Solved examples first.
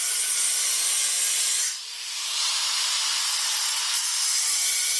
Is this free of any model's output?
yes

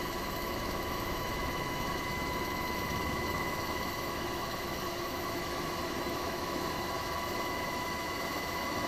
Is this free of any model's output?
no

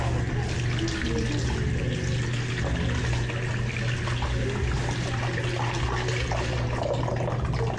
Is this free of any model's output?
yes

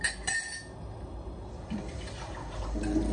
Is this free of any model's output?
yes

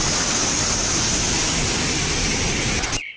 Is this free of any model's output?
yes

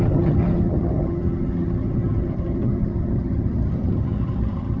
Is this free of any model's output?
no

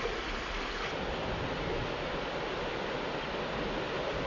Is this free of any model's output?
yes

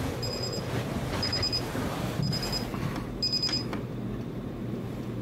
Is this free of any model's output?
yes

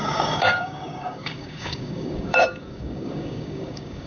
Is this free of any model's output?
no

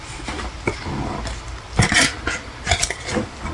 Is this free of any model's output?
yes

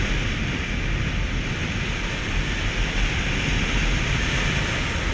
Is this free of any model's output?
yes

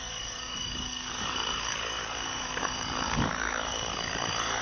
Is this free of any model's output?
no